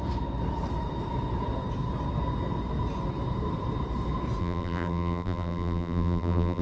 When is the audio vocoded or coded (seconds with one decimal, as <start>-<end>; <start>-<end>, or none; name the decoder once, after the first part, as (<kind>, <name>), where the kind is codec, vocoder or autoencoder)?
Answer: 4.4-6.6 (vocoder, BigVGAN v2)